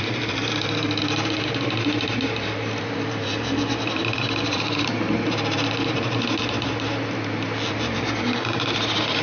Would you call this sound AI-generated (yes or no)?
yes